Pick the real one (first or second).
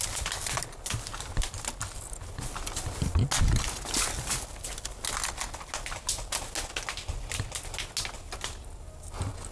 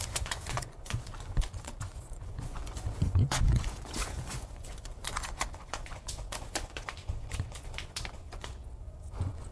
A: first